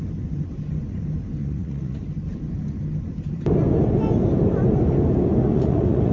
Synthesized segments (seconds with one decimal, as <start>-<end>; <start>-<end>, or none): 1.4-2.0; 5.4-6.1